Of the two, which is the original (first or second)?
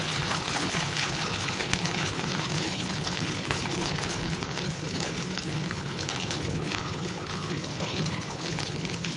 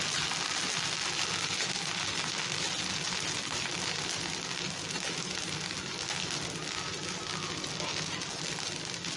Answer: second